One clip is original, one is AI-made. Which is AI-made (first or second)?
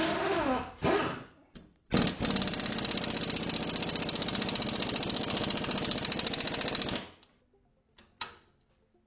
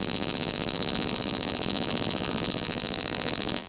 second